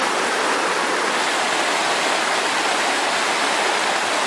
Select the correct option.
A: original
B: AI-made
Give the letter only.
A